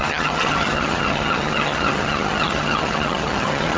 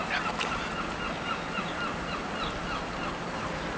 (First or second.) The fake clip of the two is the first